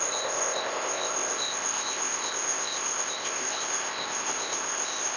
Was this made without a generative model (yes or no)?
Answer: no